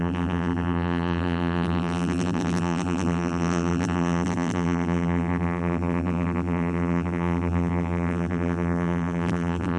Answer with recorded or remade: remade